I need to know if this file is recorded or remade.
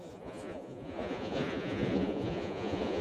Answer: remade